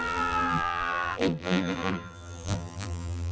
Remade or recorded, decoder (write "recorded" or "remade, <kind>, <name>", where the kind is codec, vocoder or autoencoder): remade, vocoder, BigVGAN v2